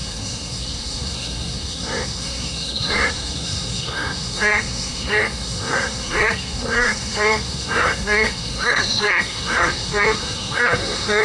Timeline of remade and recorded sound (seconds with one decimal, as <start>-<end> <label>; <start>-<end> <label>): 0.0-11.2 remade